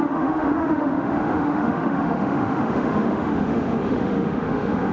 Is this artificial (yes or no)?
yes